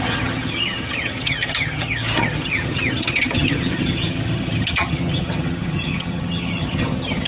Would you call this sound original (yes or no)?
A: no